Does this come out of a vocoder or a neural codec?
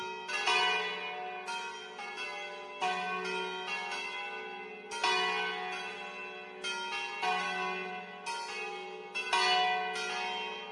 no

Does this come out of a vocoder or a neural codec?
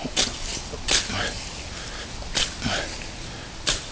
no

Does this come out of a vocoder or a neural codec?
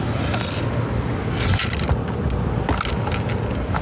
no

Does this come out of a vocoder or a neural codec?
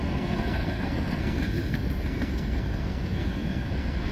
yes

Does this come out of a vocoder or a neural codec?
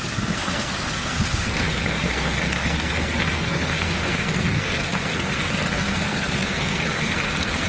yes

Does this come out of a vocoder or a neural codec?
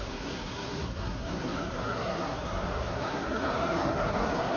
yes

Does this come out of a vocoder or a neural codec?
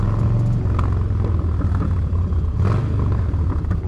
no